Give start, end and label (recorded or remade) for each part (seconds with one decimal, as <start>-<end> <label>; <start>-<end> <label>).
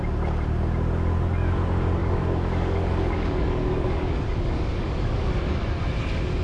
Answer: 0.0-2.0 recorded; 2.0-5.8 remade; 5.8-6.4 recorded